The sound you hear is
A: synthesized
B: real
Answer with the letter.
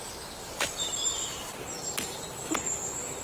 B